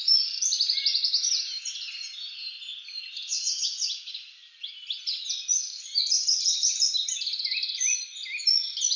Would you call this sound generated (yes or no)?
no